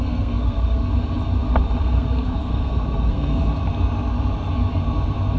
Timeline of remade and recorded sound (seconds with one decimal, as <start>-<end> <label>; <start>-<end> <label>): 0.0-0.9 remade; 0.9-1.8 recorded; 1.8-3.4 remade; 3.4-5.4 recorded

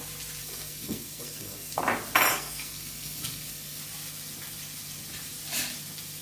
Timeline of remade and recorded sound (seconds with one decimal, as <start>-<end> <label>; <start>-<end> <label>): 0.0-0.4 recorded; 0.4-1.8 remade; 1.8-2.3 recorded; 2.3-3.8 remade; 3.8-6.2 recorded